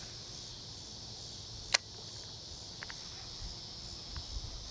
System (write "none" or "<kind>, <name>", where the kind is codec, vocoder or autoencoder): none